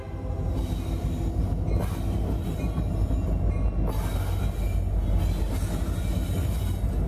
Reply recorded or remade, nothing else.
recorded